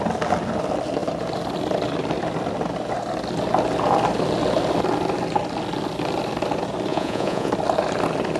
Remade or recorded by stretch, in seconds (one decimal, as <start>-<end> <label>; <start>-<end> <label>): 0.0-6.9 recorded; 6.9-7.5 remade; 7.5-8.4 recorded

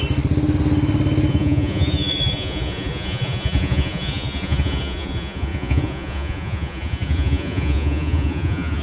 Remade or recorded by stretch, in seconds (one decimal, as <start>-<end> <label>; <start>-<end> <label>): 0.0-1.3 recorded; 1.3-8.8 remade

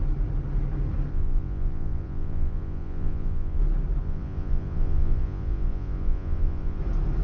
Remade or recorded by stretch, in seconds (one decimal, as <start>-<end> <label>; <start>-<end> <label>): 0.0-1.1 recorded; 1.1-3.6 remade; 3.6-4.0 recorded; 4.0-6.8 remade; 6.8-7.2 recorded

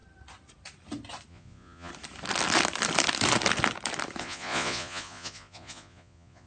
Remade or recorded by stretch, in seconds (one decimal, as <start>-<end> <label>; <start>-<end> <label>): 0.0-1.3 recorded; 1.3-1.9 remade; 1.9-4.2 recorded; 4.2-6.5 remade

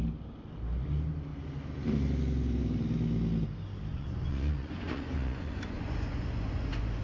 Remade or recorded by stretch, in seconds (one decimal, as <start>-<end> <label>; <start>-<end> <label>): 0.0-3.9 recorded; 3.9-7.0 remade

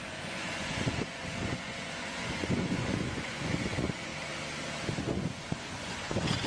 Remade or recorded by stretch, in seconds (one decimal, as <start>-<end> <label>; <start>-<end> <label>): 0.0-4.1 remade; 4.1-5.0 recorded; 5.0-6.5 remade